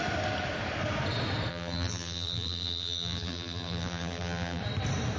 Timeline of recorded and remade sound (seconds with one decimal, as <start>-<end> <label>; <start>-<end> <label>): 0.0-1.5 recorded; 1.5-4.6 remade; 4.6-5.2 recorded